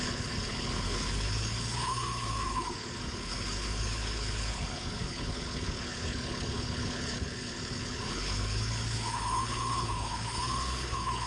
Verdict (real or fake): fake